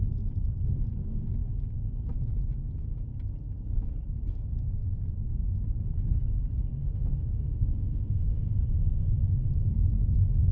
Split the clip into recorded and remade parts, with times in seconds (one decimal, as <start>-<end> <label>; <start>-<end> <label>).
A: 0.0-6.8 recorded; 6.8-8.5 remade; 8.5-10.5 recorded